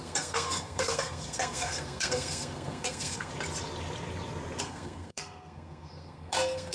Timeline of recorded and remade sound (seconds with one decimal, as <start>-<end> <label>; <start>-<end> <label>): 0.0-3.3 remade; 3.3-4.6 recorded; 4.6-6.7 remade